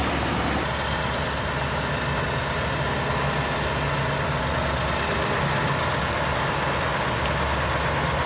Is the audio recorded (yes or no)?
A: yes